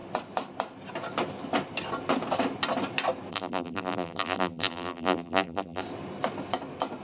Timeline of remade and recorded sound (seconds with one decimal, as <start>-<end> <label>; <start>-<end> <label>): 0.0-3.3 recorded; 3.3-5.8 remade; 5.8-7.0 recorded